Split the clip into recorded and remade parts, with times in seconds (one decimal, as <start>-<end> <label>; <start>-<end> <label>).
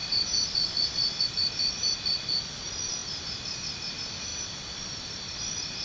0.0-1.2 remade; 1.2-5.8 recorded